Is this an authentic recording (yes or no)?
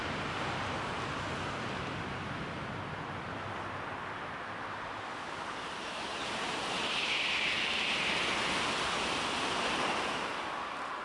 yes